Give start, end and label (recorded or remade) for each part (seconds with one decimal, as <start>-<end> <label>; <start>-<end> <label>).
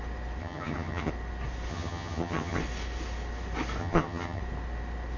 0.0-0.4 recorded; 0.4-1.1 remade; 1.1-1.7 recorded; 1.7-2.6 remade; 2.6-3.8 recorded; 3.8-4.4 remade; 4.4-5.2 recorded